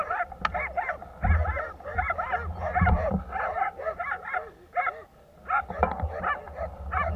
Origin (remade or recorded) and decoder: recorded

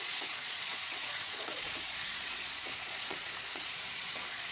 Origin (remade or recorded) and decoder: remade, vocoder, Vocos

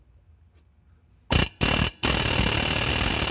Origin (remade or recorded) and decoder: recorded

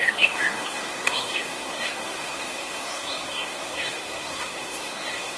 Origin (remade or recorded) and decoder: remade, codec, SNAC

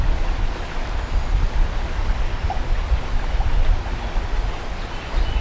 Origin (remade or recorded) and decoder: recorded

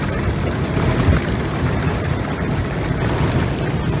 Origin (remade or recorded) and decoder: recorded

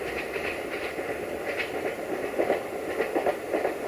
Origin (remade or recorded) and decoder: recorded